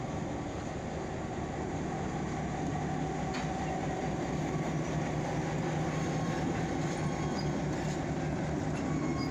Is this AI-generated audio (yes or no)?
no